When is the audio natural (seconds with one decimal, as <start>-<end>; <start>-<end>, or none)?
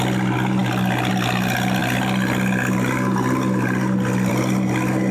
0.0-5.1